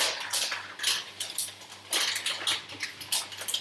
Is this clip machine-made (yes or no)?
no